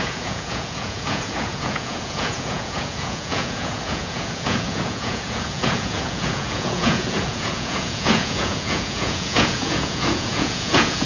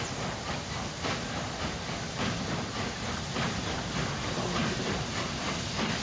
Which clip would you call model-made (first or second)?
first